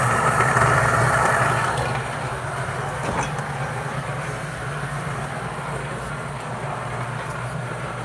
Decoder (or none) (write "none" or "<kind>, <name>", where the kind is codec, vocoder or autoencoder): vocoder, BigVGAN v2